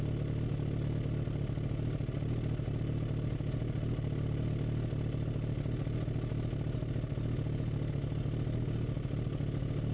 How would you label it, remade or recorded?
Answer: recorded